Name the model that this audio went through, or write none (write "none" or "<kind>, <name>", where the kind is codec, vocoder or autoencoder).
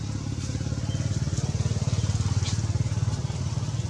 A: none